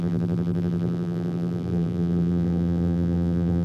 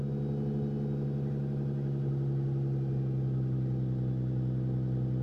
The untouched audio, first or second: second